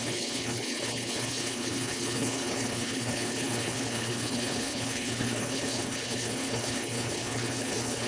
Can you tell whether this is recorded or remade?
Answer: remade